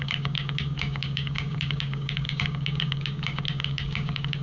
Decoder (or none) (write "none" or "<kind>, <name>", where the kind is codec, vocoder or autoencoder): codec, DAC